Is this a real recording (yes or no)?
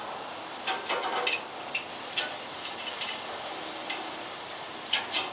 yes